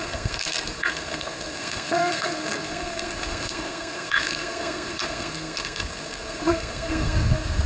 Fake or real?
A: fake